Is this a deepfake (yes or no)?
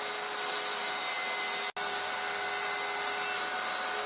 no